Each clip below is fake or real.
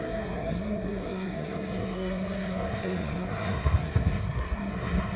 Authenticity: fake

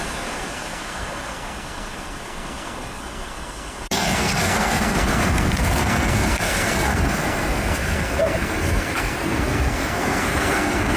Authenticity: fake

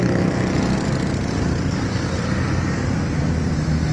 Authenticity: real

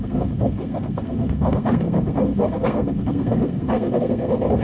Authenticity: fake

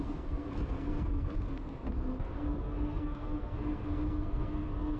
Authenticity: fake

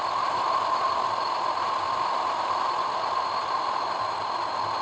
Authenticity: real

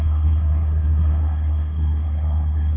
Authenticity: fake